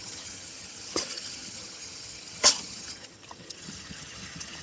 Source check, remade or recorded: remade